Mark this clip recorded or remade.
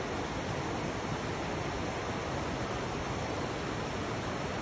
recorded